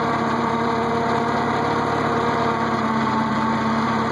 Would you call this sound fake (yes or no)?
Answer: yes